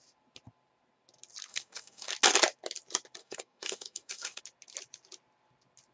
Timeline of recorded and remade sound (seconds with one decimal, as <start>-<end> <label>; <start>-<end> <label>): 0.0-1.5 recorded; 1.5-2.1 remade; 2.1-3.2 recorded; 3.2-4.4 remade; 4.4-5.9 recorded

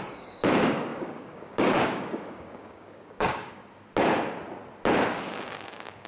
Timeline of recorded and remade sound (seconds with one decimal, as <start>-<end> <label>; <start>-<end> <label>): 0.0-3.6 remade; 3.6-5.1 recorded; 5.1-6.1 remade

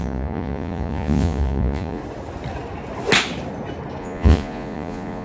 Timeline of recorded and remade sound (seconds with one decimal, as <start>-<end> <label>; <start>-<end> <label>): 0.0-2.0 remade; 2.0-4.0 recorded; 4.0-5.2 remade

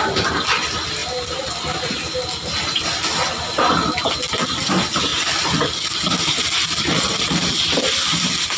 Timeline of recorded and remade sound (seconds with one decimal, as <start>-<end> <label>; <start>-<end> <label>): 0.0-8.6 recorded

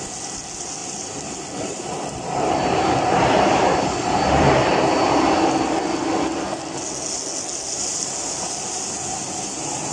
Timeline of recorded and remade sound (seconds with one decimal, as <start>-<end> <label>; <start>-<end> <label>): 0.0-4.7 remade; 4.7-9.3 recorded; 9.3-9.9 remade